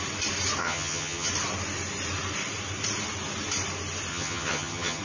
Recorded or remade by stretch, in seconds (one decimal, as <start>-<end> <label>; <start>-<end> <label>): 0.0-0.6 recorded; 0.6-1.3 remade; 1.3-4.1 recorded; 4.1-5.0 remade